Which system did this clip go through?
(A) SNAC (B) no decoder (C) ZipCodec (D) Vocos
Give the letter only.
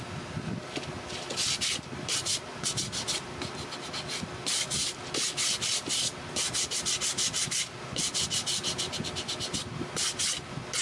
B